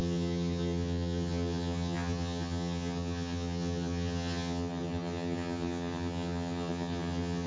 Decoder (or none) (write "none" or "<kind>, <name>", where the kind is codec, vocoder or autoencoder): vocoder, HiFi-GAN